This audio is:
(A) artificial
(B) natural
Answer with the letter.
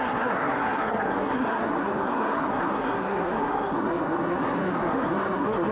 A